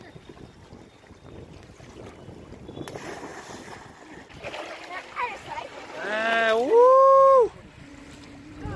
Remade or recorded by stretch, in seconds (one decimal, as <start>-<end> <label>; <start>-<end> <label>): 0.0-8.8 recorded